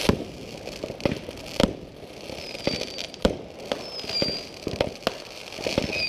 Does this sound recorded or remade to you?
recorded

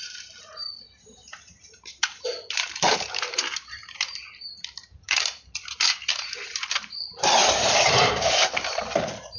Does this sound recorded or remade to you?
remade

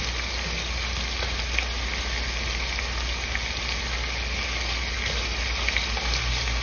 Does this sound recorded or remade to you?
recorded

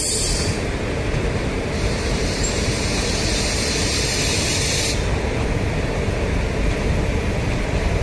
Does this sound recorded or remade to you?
remade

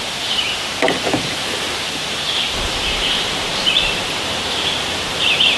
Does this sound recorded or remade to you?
remade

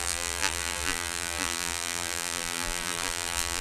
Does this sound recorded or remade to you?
remade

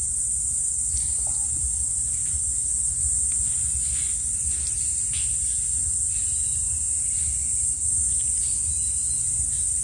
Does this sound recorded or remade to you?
recorded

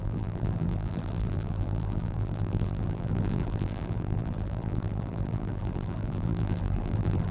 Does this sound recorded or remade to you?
remade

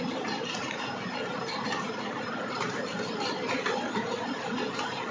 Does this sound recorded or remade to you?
remade